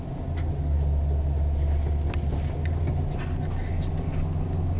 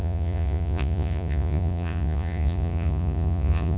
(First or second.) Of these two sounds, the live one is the first